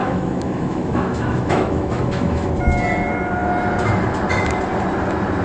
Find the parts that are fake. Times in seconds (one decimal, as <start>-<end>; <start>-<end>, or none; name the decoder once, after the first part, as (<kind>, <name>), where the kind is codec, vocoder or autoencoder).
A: 0.0-2.5 (autoencoder, DAC-VAE)